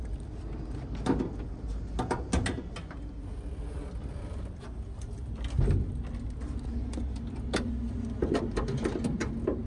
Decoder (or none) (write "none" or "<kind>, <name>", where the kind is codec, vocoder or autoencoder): none